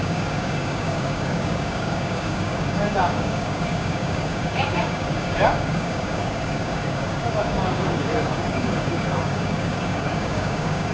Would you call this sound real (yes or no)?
no